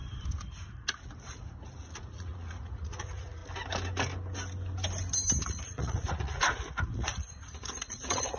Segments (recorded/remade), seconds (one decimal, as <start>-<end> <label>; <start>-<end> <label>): 0.0-1.3 recorded; 1.3-3.4 remade; 3.4-5.4 recorded; 5.4-8.4 remade